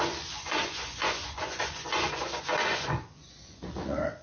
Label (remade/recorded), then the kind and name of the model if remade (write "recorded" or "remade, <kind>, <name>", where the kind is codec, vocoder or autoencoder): remade, vocoder, Vocos